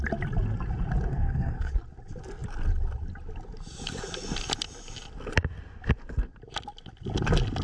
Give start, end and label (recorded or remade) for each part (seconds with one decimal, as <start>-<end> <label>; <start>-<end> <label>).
0.0-1.1 recorded; 1.1-1.7 remade; 1.7-7.6 recorded